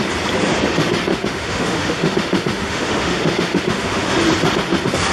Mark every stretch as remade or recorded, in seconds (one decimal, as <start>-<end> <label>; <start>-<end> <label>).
0.0-1.1 recorded; 1.1-4.2 remade; 4.2-5.1 recorded